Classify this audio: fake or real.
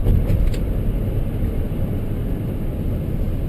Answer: real